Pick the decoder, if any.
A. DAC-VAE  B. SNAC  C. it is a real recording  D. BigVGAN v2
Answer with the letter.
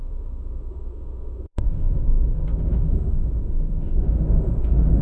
A